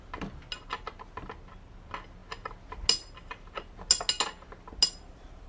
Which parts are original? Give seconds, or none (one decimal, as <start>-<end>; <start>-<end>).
0.0-5.5